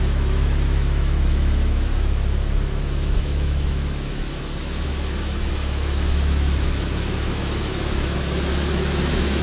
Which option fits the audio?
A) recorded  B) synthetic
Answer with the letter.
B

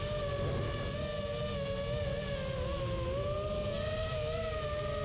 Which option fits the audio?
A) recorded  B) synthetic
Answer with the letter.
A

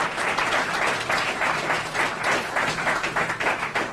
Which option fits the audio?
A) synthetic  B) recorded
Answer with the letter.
A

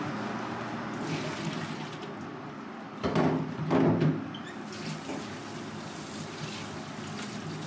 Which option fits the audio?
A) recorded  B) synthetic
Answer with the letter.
A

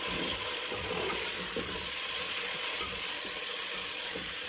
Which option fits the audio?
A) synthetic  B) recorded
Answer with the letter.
A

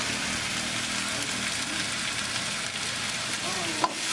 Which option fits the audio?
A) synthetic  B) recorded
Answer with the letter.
B